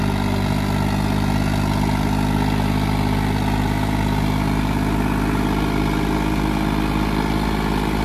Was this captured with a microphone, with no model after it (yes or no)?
yes